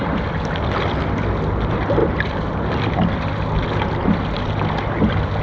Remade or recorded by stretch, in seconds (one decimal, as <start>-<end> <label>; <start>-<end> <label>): 0.0-5.4 recorded